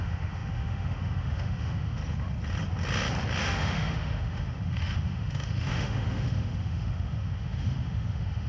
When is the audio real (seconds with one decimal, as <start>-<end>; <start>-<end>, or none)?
2.0-3.4